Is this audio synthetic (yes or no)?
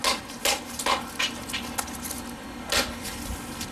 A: no